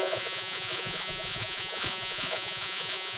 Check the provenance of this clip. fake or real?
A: fake